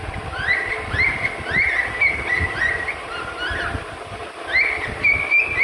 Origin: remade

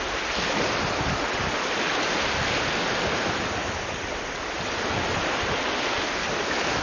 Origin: recorded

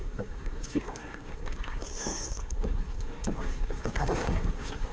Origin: remade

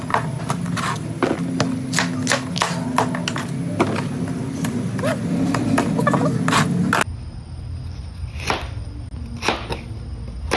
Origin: recorded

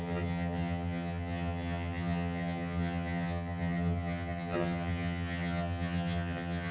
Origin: remade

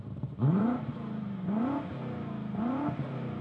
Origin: remade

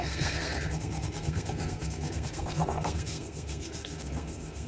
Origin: remade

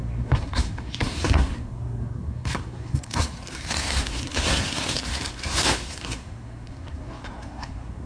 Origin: remade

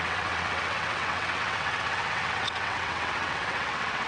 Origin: remade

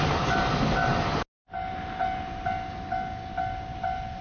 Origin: recorded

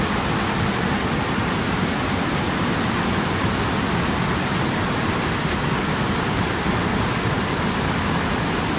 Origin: recorded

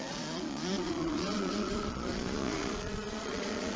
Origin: remade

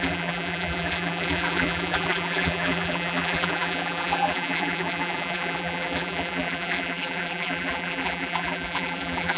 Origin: remade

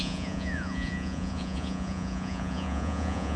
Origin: remade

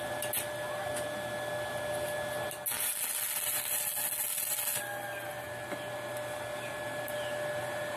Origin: recorded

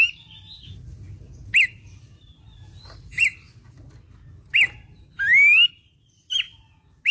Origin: recorded